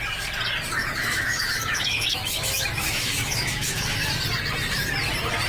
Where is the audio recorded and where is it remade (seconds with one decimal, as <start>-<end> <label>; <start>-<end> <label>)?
0.0-0.8 recorded; 0.8-4.1 remade; 4.1-5.5 recorded